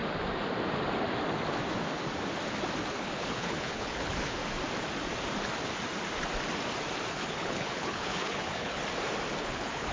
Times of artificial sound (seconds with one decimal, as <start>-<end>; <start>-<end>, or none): 2.9-4.4; 7.1-8.8; 9.4-9.9